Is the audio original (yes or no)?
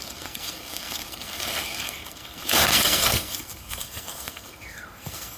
no